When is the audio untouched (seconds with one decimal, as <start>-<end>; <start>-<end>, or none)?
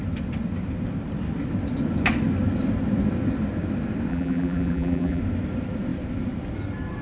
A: 0.0-4.1; 5.2-7.0